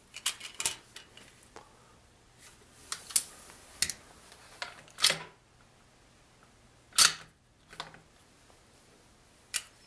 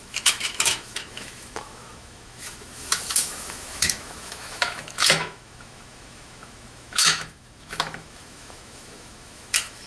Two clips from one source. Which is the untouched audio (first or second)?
first